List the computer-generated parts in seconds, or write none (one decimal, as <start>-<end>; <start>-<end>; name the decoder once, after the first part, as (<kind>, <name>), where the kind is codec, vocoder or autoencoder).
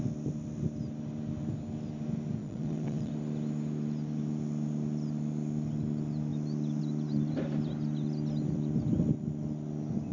2.4-3.1 (vocoder, Vocos)